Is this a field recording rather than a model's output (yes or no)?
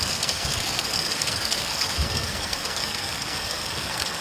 no